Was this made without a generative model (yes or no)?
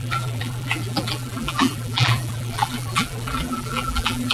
no